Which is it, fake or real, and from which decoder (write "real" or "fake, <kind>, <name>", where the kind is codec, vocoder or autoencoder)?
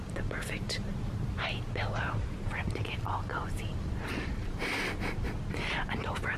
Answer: fake, vocoder, BigVGAN v2